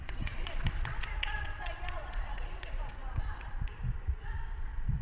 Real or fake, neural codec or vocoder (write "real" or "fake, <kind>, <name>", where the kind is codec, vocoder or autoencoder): fake, vocoder, Vocos